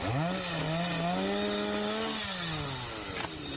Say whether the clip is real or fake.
real